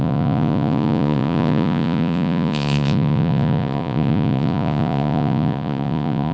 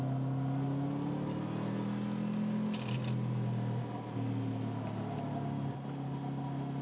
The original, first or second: second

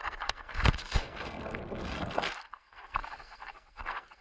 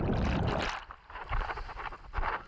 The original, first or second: second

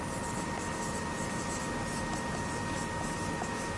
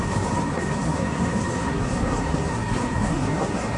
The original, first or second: first